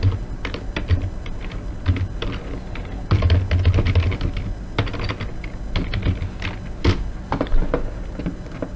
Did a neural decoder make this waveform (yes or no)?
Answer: no